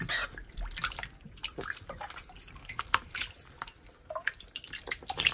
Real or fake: real